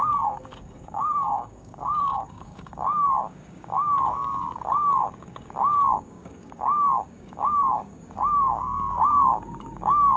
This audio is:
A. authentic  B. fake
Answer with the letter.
B